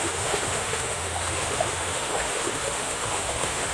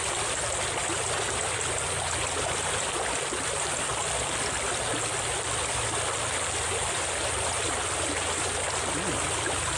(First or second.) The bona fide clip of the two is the second